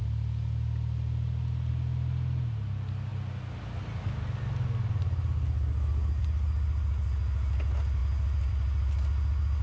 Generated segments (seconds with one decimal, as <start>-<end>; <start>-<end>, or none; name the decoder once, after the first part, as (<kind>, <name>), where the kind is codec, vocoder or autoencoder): none